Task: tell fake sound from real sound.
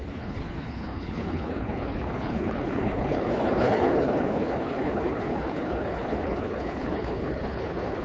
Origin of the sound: fake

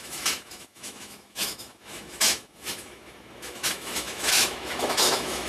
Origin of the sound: fake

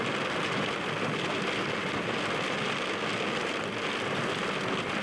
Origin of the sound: real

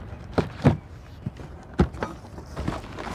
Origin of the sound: real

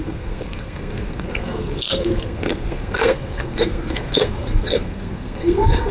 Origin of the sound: fake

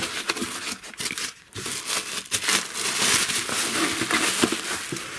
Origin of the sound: real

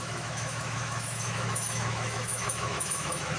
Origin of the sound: fake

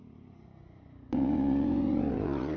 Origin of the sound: fake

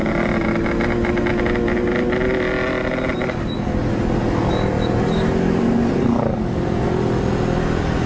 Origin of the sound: real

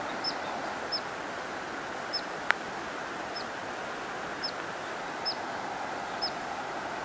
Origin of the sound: real